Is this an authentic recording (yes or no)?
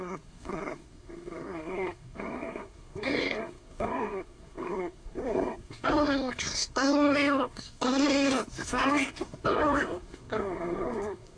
no